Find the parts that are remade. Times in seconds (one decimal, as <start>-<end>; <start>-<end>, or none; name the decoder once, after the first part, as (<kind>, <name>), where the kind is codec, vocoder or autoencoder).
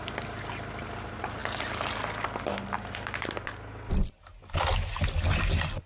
none